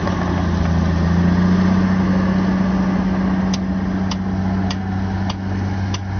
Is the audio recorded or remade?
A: recorded